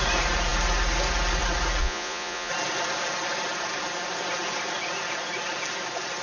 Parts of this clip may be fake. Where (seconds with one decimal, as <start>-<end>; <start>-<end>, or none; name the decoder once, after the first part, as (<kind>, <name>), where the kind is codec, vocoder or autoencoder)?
1.8-2.5 (vocoder, Vocos)